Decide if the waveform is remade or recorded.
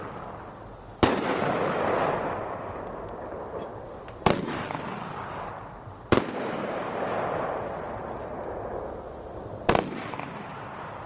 recorded